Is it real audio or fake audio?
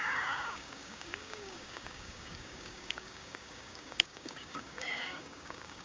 fake